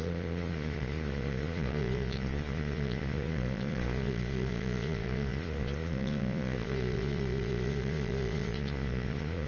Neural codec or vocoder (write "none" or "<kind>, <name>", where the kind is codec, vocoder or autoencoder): vocoder, Vocos